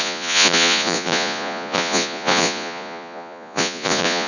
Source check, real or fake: fake